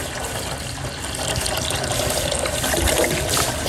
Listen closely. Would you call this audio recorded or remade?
recorded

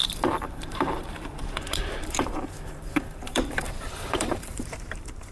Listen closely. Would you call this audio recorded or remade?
remade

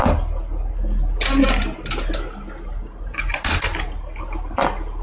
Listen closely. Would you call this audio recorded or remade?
recorded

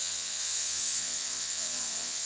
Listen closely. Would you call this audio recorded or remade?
remade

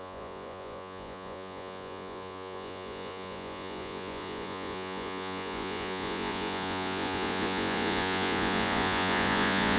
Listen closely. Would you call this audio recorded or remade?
remade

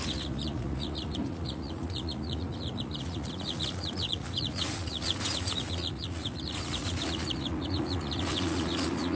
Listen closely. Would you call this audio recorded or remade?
remade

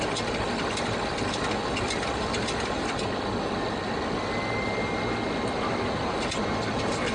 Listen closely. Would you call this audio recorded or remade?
recorded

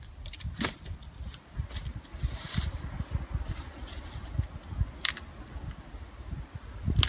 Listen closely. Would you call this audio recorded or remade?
recorded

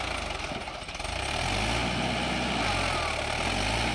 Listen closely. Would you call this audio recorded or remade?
recorded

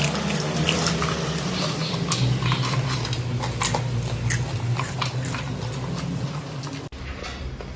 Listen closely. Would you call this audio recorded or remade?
recorded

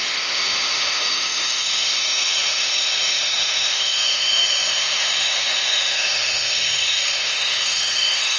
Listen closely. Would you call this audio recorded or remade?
remade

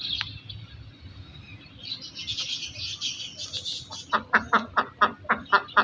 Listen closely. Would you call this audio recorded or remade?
recorded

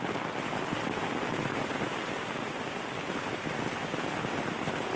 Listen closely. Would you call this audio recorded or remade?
recorded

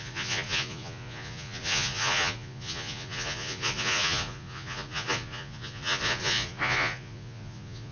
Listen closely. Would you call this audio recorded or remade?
remade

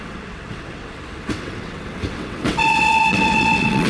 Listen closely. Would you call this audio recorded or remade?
remade